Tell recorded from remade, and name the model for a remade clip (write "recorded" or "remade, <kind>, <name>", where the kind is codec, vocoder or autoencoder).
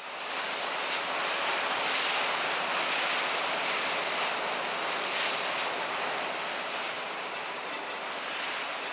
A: recorded